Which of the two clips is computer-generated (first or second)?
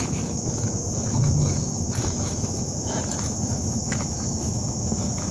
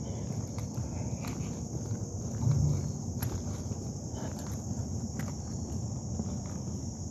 first